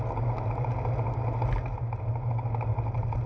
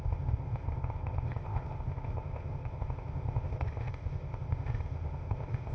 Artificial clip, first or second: second